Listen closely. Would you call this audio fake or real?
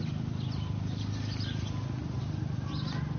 real